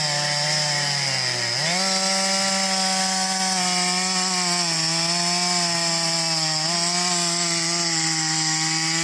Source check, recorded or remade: recorded